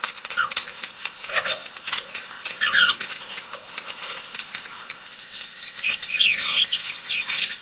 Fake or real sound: fake